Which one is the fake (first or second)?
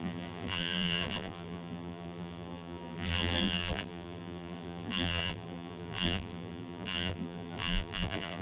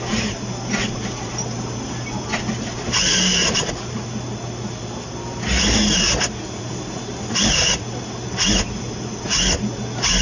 first